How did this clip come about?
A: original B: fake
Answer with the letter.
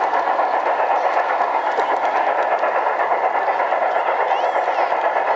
A